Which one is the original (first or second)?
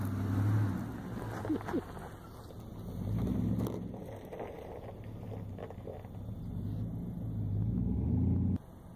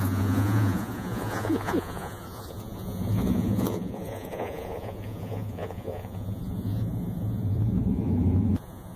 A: first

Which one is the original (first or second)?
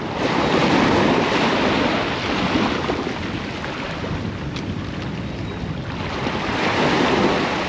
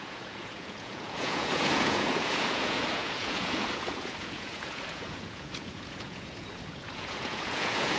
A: first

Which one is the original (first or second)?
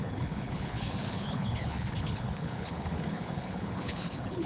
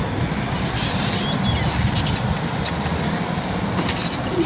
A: second